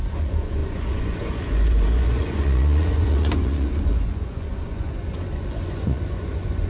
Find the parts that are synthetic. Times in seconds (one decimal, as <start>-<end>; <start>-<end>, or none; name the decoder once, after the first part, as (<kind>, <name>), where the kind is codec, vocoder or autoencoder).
0.0-6.7 (vocoder, Vocos)

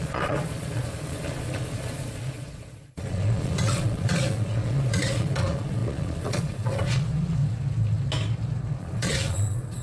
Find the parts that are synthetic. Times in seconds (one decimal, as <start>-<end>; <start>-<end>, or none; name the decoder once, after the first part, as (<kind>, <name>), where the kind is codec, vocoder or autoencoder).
0.0-7.4 (vocoder, Vocos); 8.8-9.8

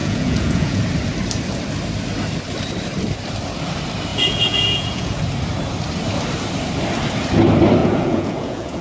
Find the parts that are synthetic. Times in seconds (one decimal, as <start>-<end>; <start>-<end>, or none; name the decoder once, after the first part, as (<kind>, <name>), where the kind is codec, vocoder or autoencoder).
0.0-0.8 (vocoder, Vocos); 4.1-5.2; 7.8-8.8

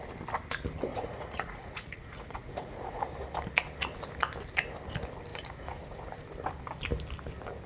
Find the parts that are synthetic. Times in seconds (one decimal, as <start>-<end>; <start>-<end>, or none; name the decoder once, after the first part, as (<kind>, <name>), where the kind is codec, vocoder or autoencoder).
0.9-3.0 (vocoder, Vocos); 5.3-6.0

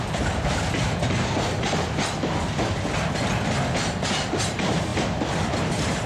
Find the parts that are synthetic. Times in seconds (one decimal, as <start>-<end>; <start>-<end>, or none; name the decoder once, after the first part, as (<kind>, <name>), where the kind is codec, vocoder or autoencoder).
0.0-0.6 (vocoder, BigVGAN v2); 4.3-6.1

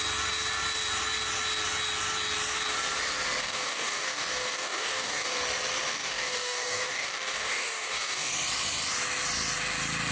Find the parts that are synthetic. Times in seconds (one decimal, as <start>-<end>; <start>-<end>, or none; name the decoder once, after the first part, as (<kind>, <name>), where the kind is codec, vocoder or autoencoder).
3.4-5.4 (codec, DAC); 5.9-8.3

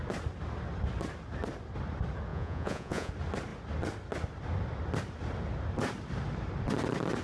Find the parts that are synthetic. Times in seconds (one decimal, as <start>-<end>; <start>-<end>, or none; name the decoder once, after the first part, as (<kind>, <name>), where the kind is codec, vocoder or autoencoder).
2.3-3.1 (vocoder, Vocos)